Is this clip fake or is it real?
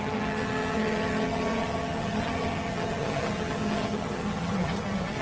fake